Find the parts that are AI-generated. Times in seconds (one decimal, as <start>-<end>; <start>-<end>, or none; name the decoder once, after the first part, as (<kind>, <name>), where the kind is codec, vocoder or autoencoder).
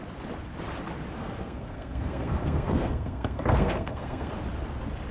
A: 1.2-4.3 (codec, SNAC)